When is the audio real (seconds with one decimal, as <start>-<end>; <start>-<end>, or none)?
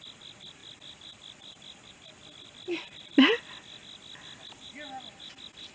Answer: 0.0-5.7